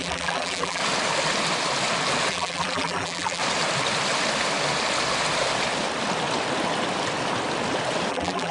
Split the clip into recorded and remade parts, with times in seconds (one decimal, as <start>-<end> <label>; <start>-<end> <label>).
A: 0.0-0.8 remade; 0.8-2.3 recorded; 2.3-3.4 remade; 3.4-8.1 recorded; 8.1-8.5 remade